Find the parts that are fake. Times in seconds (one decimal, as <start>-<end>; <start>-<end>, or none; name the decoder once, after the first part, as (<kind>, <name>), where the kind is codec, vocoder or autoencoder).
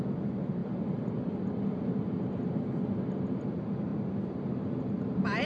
0.6-3.5 (vocoder, BigVGAN v2)